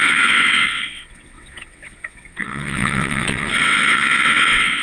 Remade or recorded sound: remade